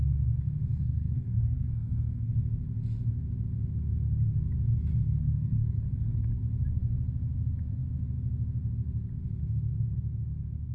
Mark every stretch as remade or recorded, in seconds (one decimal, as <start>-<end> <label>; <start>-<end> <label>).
0.0-0.7 recorded; 0.7-2.3 remade; 2.3-5.2 recorded; 5.2-6.4 remade; 6.4-10.7 recorded